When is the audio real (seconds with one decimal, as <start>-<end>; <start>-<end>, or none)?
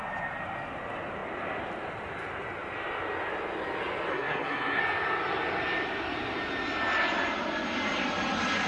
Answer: 0.0-4.1; 4.8-8.7